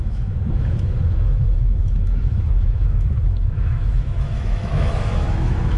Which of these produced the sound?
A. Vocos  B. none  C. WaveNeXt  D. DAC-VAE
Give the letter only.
D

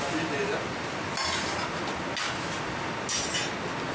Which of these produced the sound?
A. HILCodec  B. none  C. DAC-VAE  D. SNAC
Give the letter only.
B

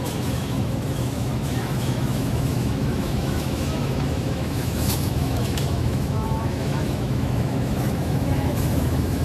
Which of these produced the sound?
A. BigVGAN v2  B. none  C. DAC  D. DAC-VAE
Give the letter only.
D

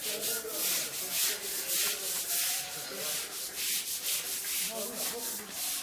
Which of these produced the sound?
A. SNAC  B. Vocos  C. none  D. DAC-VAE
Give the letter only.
C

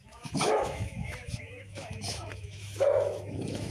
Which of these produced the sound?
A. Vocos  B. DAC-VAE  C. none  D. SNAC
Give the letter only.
B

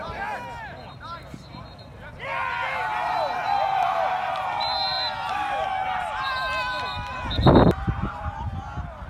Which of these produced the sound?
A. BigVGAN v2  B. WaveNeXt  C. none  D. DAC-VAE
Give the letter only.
C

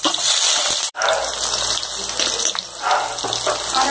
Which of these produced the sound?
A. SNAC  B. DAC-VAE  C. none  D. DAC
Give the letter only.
C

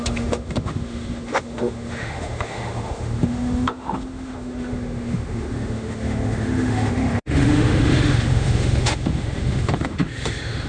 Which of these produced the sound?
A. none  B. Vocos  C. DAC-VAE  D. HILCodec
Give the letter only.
C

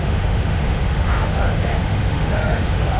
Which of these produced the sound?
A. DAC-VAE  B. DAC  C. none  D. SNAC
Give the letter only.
A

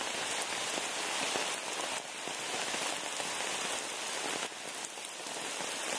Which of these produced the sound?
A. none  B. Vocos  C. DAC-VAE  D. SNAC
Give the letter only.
A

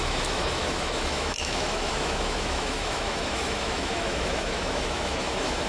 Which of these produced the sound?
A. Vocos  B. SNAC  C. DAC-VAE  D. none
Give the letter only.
C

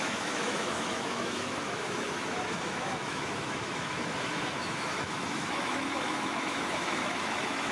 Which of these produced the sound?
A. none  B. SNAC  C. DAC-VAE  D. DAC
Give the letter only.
C